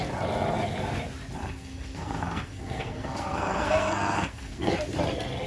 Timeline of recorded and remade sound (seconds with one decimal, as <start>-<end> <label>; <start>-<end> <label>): 0.0-1.4 recorded; 1.4-4.7 remade; 4.7-5.5 recorded